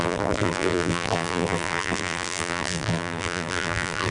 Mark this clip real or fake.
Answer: fake